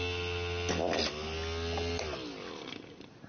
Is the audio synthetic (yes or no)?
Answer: no